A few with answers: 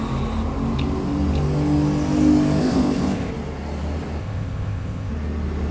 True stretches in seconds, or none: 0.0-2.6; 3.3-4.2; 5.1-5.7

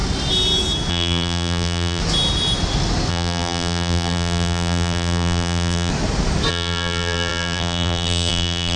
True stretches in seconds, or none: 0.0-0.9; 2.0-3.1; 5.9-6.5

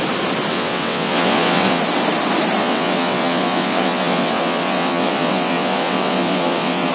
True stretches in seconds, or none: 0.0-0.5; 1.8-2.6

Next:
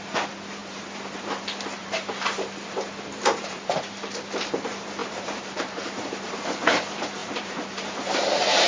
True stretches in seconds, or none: 0.0-0.6; 1.4-1.8; 3.8-5.0; 6.3-7.2

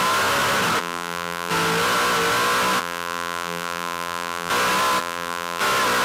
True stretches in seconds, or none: 0.0-0.8; 1.5-2.8; 4.5-5.0; 5.6-6.0

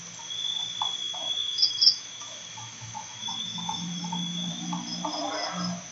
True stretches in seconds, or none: 0.0-1.0; 4.5-5.9

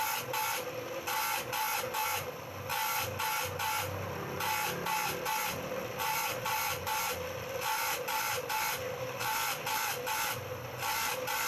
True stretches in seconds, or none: 0.0-11.5

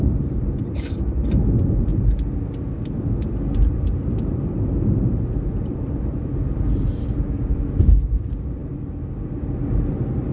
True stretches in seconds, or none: 1.9-2.6